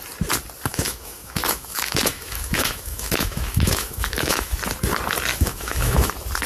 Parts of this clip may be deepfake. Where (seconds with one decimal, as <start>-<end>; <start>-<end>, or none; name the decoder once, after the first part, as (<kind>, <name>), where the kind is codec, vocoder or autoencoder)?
0.7-4.6 (autoencoder, DAC-VAE); 5.3-6.1